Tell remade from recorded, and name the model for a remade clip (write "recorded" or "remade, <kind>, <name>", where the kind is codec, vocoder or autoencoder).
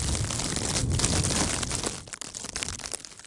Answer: recorded